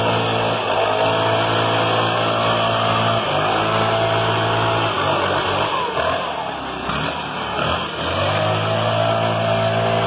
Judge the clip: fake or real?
real